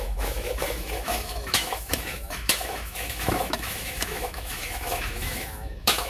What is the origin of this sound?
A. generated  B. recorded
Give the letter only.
A